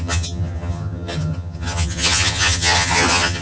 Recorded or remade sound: remade